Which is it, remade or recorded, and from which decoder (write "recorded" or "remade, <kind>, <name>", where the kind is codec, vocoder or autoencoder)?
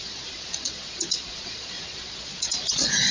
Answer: remade, vocoder, Vocos